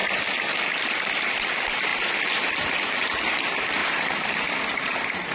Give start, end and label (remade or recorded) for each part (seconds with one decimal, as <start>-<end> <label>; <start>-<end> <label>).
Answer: 0.0-5.3 remade